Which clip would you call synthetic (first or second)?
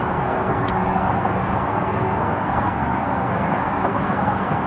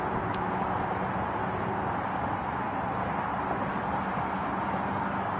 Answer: first